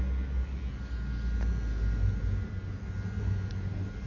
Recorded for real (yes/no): yes